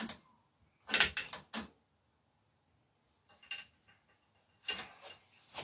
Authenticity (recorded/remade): recorded